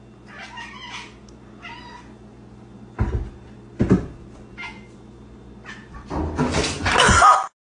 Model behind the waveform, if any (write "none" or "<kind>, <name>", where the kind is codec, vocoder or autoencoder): none